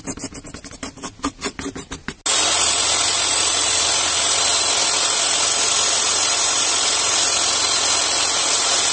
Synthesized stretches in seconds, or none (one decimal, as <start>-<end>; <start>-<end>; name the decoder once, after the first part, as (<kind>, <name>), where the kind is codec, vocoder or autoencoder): none